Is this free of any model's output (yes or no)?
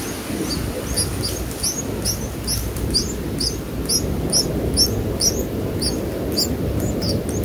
yes